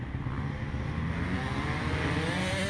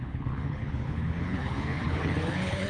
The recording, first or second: first